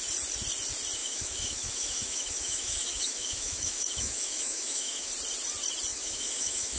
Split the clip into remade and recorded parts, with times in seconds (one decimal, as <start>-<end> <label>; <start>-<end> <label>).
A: 0.0-1.0 recorded; 1.0-5.1 remade; 5.1-5.9 recorded; 5.9-6.8 remade